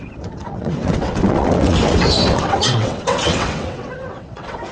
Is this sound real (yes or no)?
no